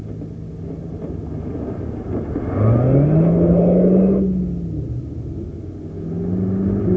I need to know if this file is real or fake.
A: real